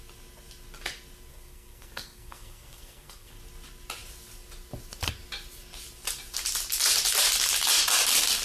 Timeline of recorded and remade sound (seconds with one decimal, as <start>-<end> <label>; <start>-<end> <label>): 0.0-1.3 recorded; 1.3-3.3 remade; 3.3-8.4 recorded